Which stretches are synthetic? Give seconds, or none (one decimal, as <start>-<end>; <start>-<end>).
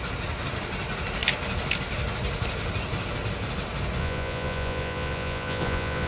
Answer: 4.0-6.1